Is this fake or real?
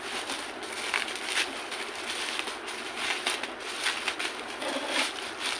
real